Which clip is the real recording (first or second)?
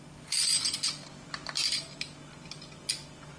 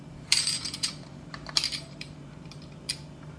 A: first